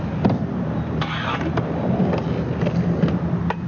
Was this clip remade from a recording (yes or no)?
no